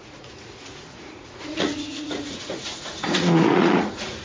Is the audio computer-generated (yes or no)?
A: yes